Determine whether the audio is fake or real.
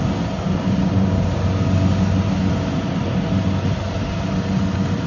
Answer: real